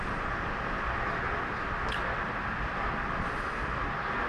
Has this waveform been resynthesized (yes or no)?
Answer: no